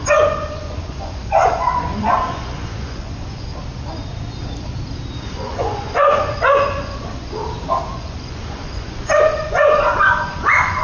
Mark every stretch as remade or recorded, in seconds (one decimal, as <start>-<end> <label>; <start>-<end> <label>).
0.0-3.5 remade; 3.5-5.3 recorded; 5.3-7.4 remade; 7.4-7.9 recorded; 7.9-10.8 remade